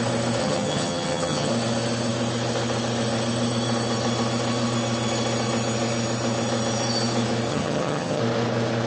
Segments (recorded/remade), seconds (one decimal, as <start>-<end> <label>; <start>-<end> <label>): 0.0-0.4 recorded; 0.4-1.5 remade; 1.5-7.5 recorded; 7.5-8.2 remade; 8.2-8.9 recorded